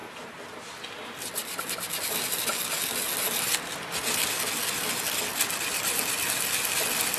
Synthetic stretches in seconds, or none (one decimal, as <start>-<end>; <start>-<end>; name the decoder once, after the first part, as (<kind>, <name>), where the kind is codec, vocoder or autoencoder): none